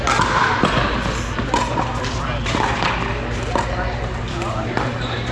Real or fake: real